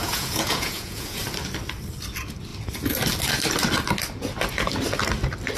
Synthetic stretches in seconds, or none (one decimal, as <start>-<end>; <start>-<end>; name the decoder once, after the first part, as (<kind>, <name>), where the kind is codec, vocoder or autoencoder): 0.0-1.2 (vocoder, Vocos)